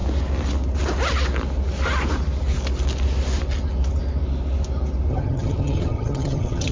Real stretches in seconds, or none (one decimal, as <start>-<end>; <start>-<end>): 0.0-5.1